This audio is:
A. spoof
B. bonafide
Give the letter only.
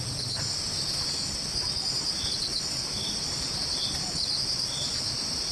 B